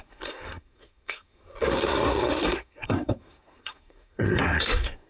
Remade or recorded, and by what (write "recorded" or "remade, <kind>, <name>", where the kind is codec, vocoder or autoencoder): remade, codec, SNAC